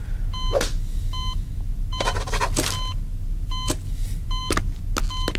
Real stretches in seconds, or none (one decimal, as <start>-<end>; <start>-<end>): 0.0-5.4